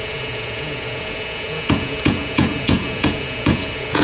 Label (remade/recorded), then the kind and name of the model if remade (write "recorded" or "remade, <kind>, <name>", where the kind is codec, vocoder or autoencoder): remade, vocoder, Vocos